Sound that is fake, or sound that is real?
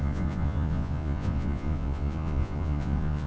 fake